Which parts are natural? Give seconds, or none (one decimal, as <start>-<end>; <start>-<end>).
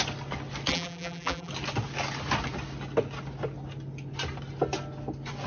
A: 0.0-0.7; 1.5-5.5